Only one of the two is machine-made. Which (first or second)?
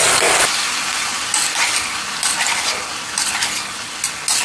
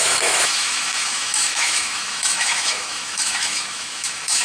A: second